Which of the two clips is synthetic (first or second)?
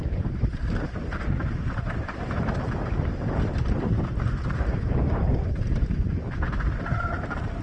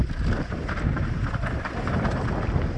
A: first